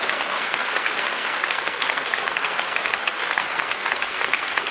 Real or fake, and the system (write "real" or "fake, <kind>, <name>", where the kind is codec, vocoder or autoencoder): fake, codec, SNAC